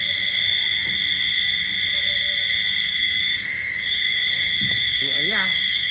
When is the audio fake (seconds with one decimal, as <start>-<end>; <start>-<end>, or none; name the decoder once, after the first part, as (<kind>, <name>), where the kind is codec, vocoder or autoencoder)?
2.9-5.9 (codec, DAC)